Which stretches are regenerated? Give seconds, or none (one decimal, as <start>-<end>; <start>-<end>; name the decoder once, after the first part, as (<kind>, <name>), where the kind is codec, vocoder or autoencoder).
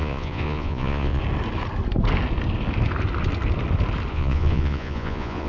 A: 0.0-1.2 (vocoder, Vocos); 4.1-5.5